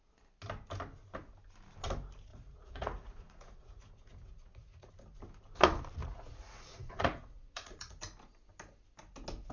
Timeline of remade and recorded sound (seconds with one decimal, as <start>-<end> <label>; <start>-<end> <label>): 0.0-2.3 recorded; 2.3-4.9 remade; 4.9-6.0 recorded; 6.0-8.0 remade; 8.0-9.5 recorded